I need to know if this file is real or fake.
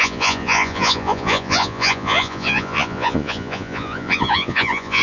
fake